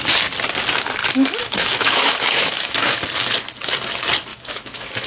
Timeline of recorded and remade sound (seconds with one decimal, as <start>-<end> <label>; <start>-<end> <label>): 0.0-1.0 recorded; 1.0-3.0 remade; 3.0-4.3 recorded; 4.3-5.1 remade